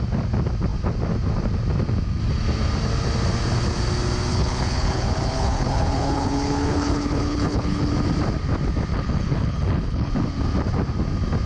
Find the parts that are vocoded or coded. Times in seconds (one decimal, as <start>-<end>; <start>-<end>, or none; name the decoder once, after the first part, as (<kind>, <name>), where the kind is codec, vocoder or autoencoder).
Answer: 4.3-7.9 (codec, HILCodec); 8.9-10.1